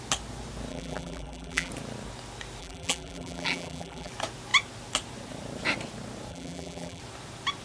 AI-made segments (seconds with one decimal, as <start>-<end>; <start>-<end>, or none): 0.7-1.7; 2.6-4.1; 6.3-7.0

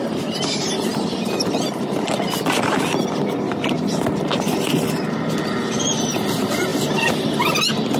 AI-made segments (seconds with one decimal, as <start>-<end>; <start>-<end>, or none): none

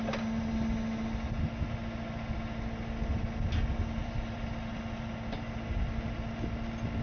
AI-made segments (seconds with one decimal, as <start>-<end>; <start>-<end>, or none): 4.0-4.8

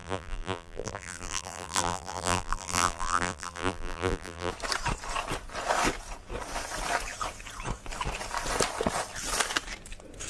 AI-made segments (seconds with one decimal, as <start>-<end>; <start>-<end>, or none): 0.0-4.5

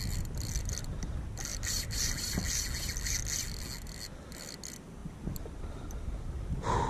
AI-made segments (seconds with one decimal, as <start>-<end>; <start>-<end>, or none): none

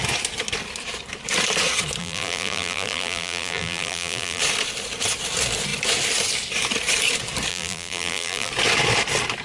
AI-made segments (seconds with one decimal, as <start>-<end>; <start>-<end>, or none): 2.0-4.4; 7.5-8.5